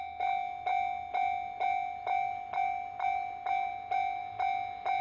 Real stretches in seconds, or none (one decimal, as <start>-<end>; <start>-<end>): 0.0-5.0